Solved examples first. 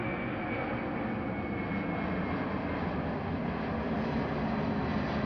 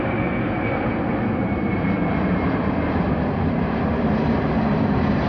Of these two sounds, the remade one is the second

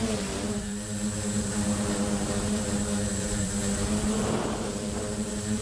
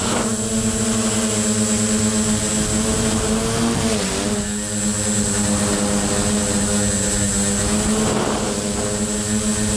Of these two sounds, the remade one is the first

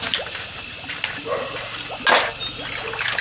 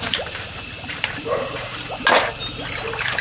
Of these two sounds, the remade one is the second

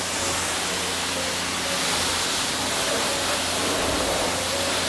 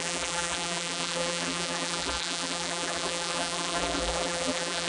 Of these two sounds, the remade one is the second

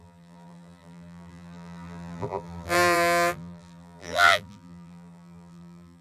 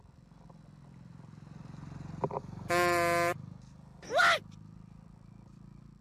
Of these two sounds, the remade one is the first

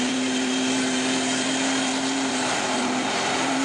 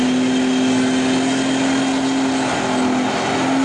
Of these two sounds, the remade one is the first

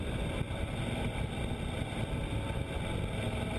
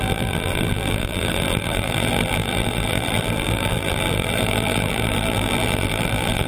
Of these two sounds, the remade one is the second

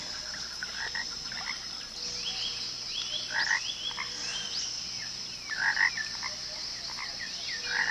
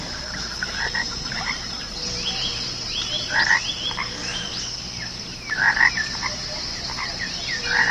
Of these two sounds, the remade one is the second